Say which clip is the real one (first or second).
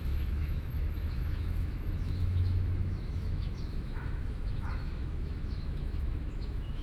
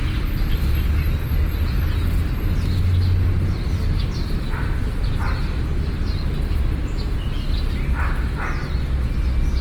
second